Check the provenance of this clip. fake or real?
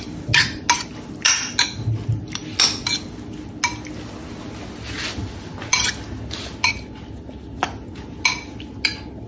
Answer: real